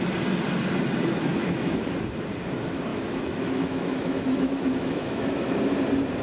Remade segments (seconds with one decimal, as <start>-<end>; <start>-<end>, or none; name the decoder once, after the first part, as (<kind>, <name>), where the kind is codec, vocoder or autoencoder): 1.3-1.9 (autoencoder, DAC-VAE); 2.9-5.6